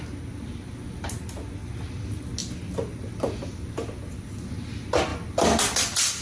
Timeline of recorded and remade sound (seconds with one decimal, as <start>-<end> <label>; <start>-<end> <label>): 0.0-2.4 recorded; 2.4-4.6 remade; 4.6-5.1 recorded; 5.1-6.2 remade